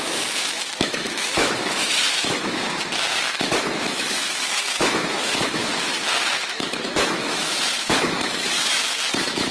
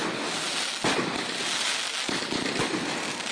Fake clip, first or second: first